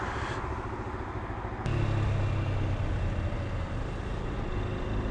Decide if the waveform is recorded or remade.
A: recorded